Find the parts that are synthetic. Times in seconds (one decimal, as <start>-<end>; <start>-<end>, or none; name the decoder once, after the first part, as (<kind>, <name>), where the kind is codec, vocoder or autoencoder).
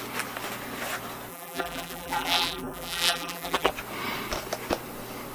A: 1.3-3.7 (vocoder, BigVGAN v2)